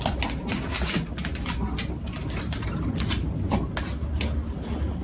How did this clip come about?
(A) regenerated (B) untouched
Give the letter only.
B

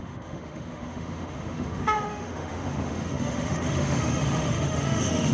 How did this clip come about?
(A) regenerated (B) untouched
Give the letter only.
A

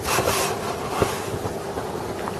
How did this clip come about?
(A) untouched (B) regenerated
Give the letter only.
A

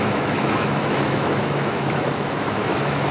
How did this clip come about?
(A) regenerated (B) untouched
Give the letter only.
A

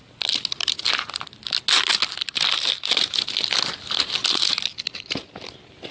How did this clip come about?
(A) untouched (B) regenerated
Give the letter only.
A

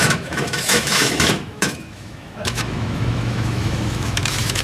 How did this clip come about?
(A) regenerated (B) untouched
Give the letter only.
A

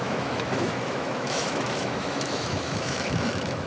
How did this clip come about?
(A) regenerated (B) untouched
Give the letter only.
A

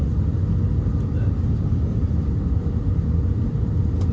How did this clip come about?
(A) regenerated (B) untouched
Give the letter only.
B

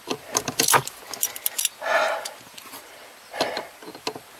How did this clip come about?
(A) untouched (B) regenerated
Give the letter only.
A